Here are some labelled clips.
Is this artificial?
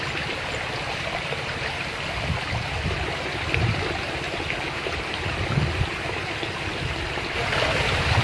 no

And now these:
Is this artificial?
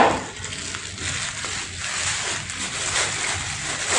no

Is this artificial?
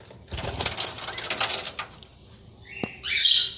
no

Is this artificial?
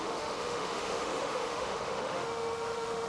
yes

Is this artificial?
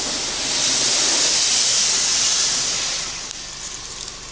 no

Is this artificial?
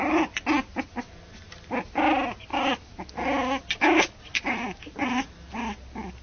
no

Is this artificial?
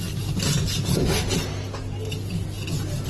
no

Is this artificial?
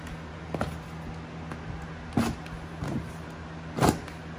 no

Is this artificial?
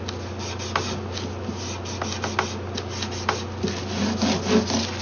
no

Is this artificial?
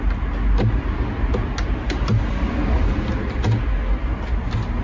no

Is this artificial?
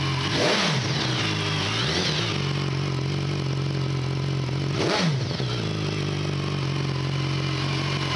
no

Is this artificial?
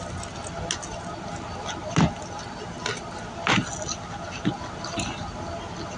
no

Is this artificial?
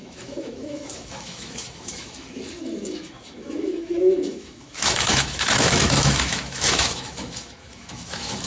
yes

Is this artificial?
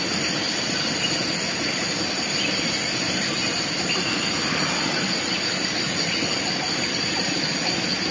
no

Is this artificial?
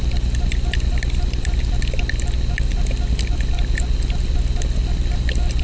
no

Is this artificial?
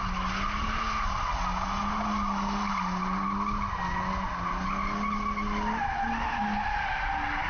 no